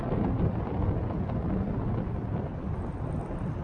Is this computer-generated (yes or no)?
no